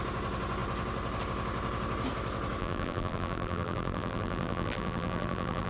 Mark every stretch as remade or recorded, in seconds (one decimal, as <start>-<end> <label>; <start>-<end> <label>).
0.0-2.6 recorded; 2.6-5.7 remade